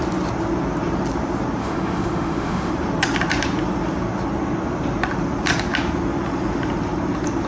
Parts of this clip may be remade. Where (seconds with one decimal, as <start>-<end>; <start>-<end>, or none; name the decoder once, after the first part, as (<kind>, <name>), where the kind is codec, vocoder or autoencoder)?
1.6-2.7 (autoencoder, DAC-VAE)